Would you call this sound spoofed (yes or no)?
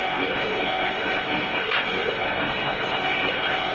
yes